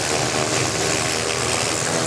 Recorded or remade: recorded